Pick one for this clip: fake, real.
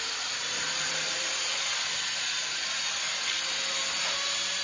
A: real